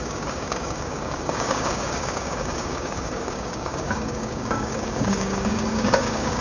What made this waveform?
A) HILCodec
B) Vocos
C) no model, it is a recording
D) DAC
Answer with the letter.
D